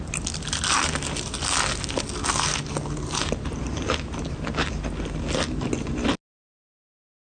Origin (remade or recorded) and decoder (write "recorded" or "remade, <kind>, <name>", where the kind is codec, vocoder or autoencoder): recorded